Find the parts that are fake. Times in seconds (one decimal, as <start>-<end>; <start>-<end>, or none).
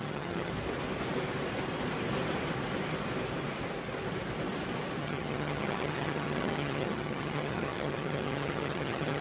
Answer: 0.0-0.5; 5.0-9.2